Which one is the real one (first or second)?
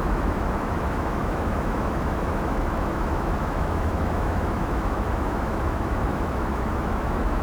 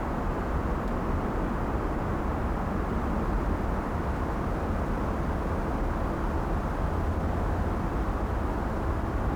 second